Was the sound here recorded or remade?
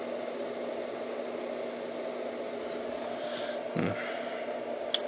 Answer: recorded